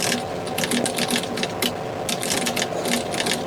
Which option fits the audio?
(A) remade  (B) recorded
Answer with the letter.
B